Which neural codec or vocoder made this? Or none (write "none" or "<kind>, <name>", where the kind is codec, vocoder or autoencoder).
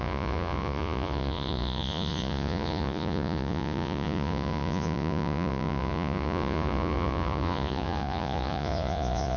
vocoder, Vocos